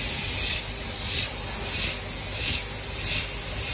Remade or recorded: recorded